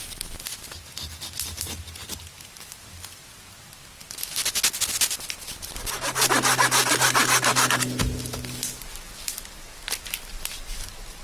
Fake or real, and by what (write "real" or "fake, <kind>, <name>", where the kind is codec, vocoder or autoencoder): real